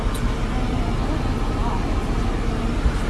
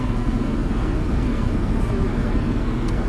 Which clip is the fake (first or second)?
second